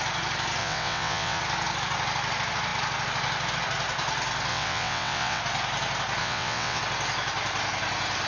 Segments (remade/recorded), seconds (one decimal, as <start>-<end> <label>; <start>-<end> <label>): 0.0-0.6 recorded; 0.6-1.4 remade; 1.4-4.5 recorded; 4.5-5.4 remade; 5.4-6.2 recorded; 6.2-6.8 remade; 6.8-8.3 recorded